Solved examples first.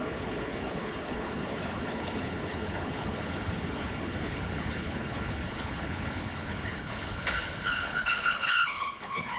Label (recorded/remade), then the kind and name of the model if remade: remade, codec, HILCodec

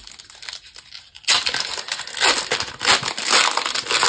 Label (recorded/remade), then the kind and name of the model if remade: recorded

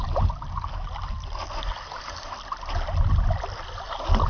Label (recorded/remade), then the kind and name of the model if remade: recorded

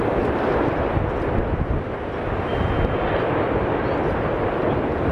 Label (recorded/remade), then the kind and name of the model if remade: recorded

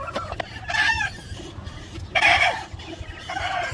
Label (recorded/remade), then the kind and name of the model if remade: recorded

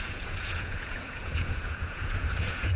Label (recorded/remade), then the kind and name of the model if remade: remade, vocoder, Vocos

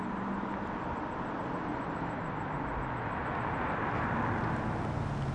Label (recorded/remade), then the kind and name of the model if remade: recorded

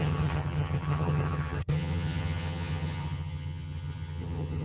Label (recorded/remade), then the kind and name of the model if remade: remade, vocoder, HiFi-GAN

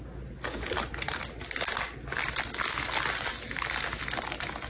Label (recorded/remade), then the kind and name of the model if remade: recorded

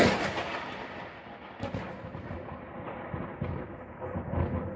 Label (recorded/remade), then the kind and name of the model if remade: recorded